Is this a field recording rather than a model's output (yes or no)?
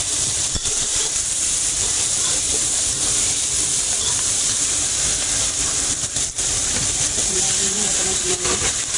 no